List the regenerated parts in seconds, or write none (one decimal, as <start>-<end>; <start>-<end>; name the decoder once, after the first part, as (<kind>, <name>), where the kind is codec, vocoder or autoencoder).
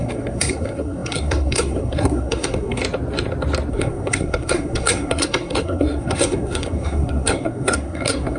0.0-2.8 (codec, SNAC); 3.7-8.4